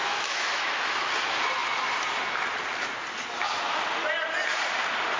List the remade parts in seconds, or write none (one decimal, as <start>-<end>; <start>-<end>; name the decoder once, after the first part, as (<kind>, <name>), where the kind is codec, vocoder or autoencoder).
0.0-1.1 (autoencoder, DAC-VAE)